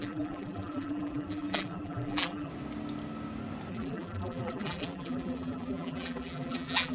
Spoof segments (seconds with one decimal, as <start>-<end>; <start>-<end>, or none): 0.0-2.5; 3.7-6.9